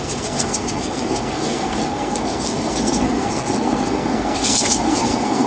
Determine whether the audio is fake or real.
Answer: fake